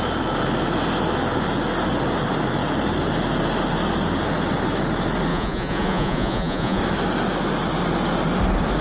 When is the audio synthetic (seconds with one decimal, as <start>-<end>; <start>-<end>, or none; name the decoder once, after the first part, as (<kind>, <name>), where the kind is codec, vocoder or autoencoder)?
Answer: 5.3-6.8 (vocoder, Vocos)